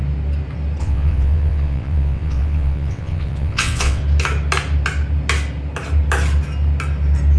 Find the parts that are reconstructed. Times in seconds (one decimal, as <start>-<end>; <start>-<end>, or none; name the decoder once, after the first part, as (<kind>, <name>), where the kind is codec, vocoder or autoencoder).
0.8-4.0 (vocoder, WaveNeXt)